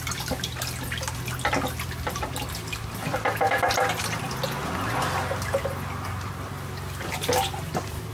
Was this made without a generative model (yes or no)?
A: yes